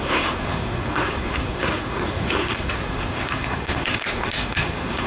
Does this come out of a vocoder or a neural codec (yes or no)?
yes